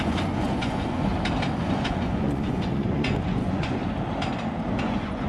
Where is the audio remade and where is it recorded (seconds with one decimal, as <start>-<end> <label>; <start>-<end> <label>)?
0.0-1.1 remade; 1.1-1.6 recorded; 1.6-3.8 remade; 3.8-4.8 recorded; 4.8-5.3 remade